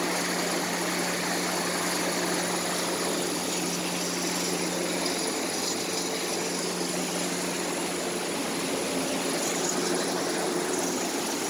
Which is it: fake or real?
real